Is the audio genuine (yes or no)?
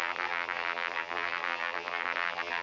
no